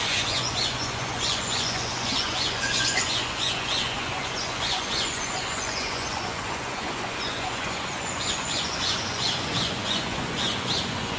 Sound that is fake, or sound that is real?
fake